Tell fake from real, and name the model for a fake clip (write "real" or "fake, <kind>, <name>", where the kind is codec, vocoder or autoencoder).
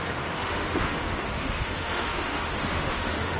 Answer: fake, autoencoder, DAC-VAE